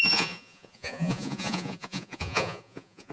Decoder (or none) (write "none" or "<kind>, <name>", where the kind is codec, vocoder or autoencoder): vocoder, Vocos